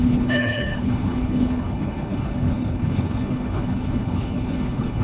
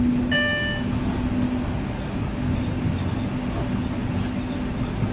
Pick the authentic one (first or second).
second